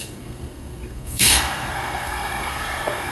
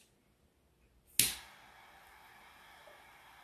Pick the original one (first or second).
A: second